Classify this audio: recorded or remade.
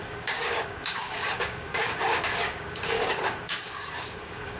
remade